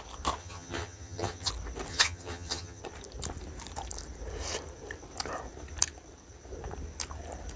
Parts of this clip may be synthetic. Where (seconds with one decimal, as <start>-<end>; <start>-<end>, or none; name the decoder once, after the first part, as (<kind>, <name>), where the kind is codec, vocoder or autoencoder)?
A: 0.4-1.5 (vocoder, HiFi-GAN); 1.9-2.8